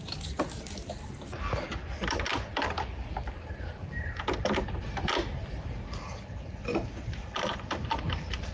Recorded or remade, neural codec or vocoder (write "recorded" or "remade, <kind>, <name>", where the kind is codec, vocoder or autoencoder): recorded